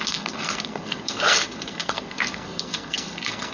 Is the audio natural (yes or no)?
no